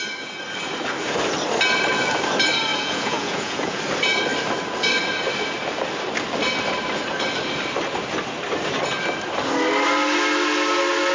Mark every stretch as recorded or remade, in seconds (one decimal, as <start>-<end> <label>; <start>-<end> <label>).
0.0-2.7 recorded; 2.7-3.8 remade; 3.8-11.1 recorded

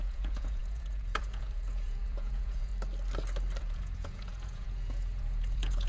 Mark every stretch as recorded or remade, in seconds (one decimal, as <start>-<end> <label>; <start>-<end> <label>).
0.0-2.7 remade; 2.7-3.6 recorded; 3.6-5.9 remade